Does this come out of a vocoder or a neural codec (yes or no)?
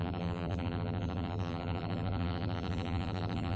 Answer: yes